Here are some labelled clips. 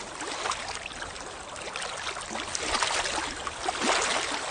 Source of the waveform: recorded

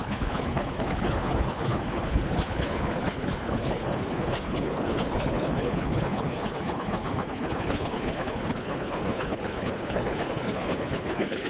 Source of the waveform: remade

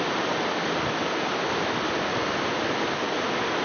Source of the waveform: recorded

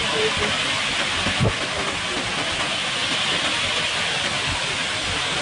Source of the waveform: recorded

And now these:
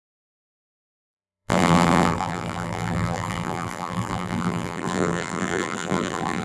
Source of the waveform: remade